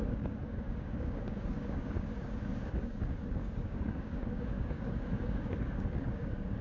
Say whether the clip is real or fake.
fake